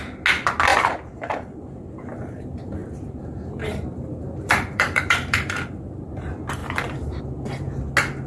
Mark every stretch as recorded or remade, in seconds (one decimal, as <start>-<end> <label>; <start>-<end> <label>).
0.0-0.7 recorded; 0.7-2.0 remade; 2.0-2.8 recorded; 2.8-6.1 remade; 6.1-8.3 recorded